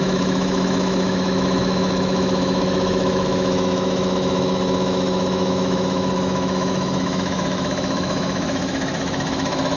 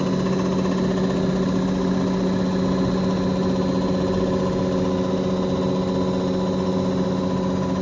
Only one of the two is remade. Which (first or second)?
first